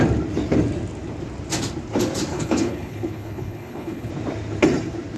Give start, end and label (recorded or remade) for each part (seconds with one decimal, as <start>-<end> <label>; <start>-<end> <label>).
0.0-2.3 recorded; 2.3-4.1 remade; 4.1-5.2 recorded